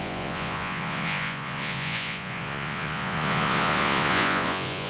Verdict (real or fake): fake